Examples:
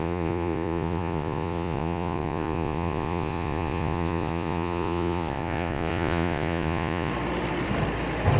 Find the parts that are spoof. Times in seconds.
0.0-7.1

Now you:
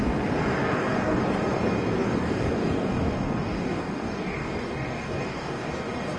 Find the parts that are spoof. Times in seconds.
0.6-1.2; 2.0-5.7